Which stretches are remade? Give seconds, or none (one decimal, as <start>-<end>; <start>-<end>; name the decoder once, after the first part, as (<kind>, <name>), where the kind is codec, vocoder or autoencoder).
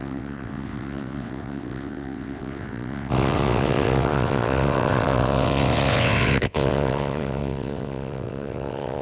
0.0-9.0 (vocoder, WaveNeXt)